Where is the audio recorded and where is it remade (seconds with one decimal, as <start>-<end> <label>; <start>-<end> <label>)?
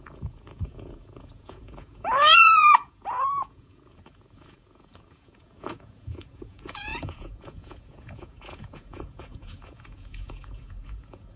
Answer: 0.0-11.4 remade